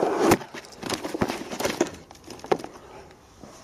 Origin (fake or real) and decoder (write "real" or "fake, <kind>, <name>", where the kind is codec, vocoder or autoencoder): fake, vocoder, BigVGAN v2